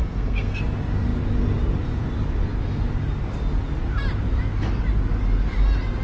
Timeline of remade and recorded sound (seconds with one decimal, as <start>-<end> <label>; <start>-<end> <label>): 0.0-0.6 remade; 0.6-6.0 recorded